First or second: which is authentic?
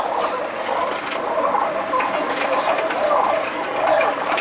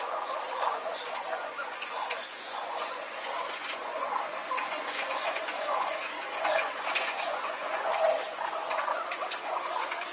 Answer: first